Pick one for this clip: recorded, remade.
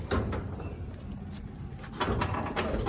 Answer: recorded